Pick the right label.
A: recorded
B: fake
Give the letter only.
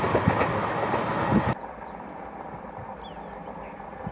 A